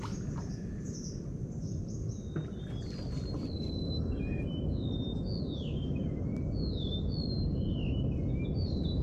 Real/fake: real